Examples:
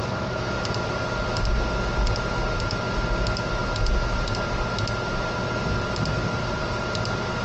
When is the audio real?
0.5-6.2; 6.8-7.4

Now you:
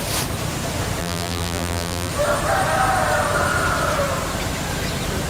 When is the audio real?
0.0-1.0; 2.1-5.3

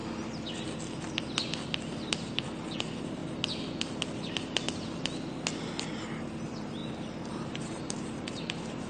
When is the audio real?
0.0-2.8; 3.2-5.9; 6.8-7.3

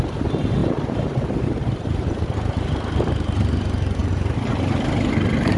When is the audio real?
0.0-0.6; 2.1-4.0; 4.9-5.6

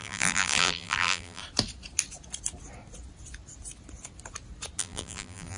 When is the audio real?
1.4-4.8